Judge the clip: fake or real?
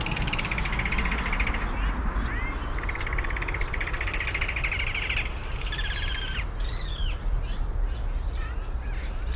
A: real